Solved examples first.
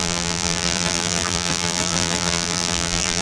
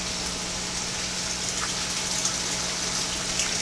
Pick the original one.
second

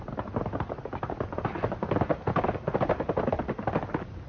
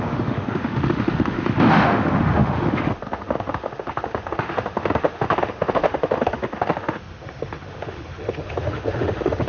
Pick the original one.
first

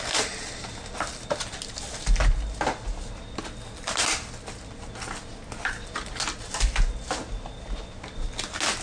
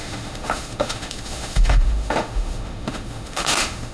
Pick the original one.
first